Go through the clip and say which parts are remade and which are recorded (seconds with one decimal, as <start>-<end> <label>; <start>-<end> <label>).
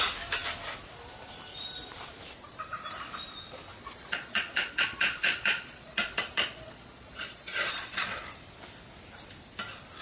0.0-3.8 recorded; 3.8-8.3 remade; 8.3-10.0 recorded